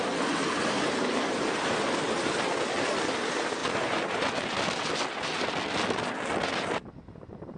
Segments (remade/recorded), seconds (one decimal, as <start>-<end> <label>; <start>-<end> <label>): 0.0-0.4 recorded; 0.4-2.1 remade; 2.1-3.6 recorded; 3.6-4.3 remade; 4.3-7.6 recorded